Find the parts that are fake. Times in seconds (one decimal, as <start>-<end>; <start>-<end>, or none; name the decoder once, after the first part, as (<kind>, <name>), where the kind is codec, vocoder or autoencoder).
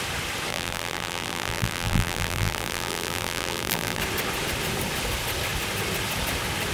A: 0.5-4.0 (vocoder, BigVGAN v2)